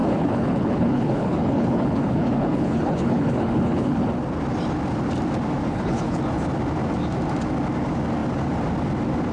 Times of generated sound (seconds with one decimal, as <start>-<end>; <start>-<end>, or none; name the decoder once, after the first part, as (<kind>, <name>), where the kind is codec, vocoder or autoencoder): 0.0-4.1 (codec, HILCodec); 5.6-6.2